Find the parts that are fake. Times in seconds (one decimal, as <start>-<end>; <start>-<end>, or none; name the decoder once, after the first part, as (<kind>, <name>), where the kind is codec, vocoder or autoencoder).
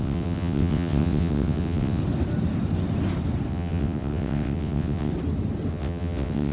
0.0-2.0 (vocoder, WaveNeXt); 3.5-5.1; 5.7-6.5